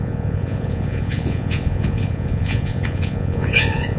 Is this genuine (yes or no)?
no